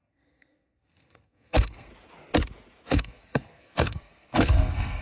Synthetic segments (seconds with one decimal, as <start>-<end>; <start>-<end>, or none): 0.0-1.9; 2.9-5.0